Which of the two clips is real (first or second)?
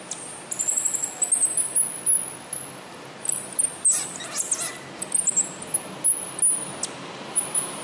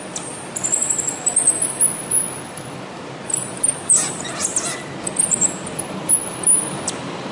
first